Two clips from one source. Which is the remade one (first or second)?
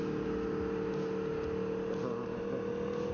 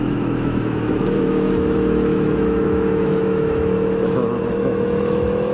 second